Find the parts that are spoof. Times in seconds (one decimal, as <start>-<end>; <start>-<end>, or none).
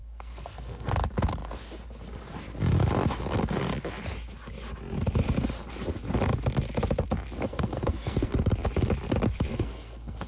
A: 0.0-0.9; 7.5-8.3; 9.5-10.3